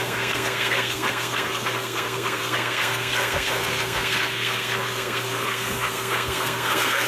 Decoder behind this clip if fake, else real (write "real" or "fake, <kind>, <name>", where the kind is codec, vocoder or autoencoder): fake, codec, SNAC